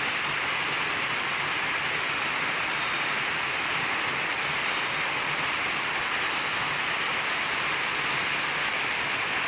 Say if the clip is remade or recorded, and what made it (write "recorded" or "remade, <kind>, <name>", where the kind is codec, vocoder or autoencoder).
recorded